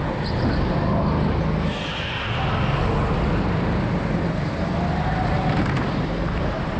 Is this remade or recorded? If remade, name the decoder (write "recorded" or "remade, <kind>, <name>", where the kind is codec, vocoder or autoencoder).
recorded